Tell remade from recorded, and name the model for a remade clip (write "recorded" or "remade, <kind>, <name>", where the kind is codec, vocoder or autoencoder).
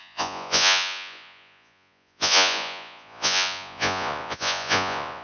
remade, vocoder, Vocos